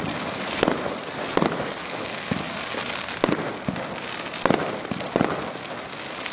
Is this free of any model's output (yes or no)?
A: yes